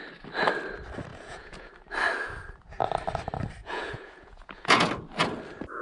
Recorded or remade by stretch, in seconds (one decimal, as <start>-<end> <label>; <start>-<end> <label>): 0.0-1.1 recorded; 1.1-1.7 remade; 1.7-3.6 recorded; 3.6-4.9 remade; 4.9-5.8 recorded

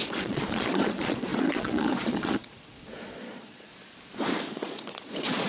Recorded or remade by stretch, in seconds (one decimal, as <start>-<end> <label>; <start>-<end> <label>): 0.0-3.7 remade; 3.7-4.5 recorded; 4.5-5.5 remade

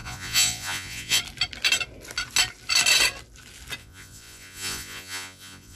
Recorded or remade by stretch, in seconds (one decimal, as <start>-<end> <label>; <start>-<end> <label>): 0.0-1.2 remade; 1.2-3.8 recorded; 3.8-5.8 remade

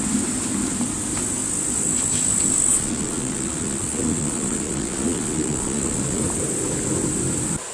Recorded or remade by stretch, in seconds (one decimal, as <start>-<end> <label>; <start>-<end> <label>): 0.0-2.7 recorded; 2.7-6.2 remade; 6.2-7.7 recorded

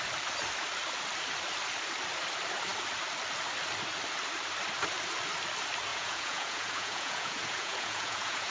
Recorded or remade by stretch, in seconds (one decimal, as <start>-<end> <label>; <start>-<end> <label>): 0.0-5.9 recorded; 5.9-8.5 remade